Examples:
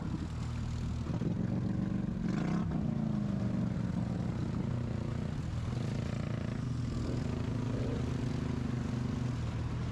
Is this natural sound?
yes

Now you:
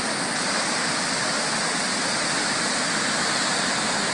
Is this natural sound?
yes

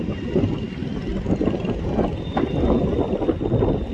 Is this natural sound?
yes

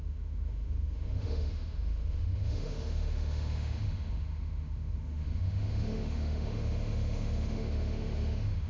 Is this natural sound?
no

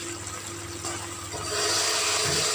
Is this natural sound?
yes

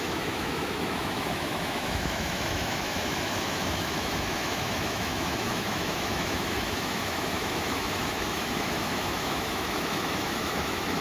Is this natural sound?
no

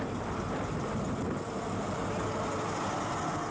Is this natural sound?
yes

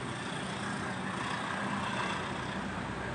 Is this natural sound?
yes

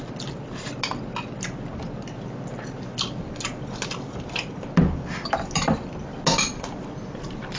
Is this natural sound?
yes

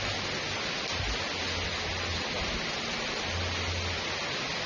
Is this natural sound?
yes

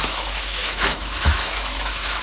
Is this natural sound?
no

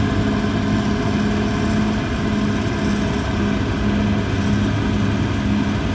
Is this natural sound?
yes